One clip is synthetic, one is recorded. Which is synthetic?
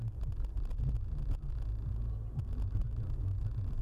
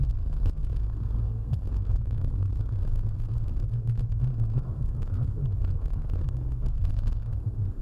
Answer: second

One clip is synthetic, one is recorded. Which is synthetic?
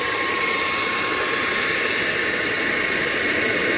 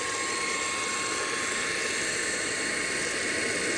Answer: first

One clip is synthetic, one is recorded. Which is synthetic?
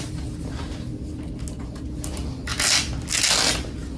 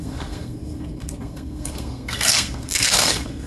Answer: second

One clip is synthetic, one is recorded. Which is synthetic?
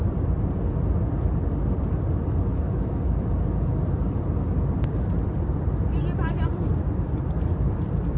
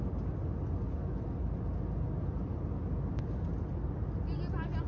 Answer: first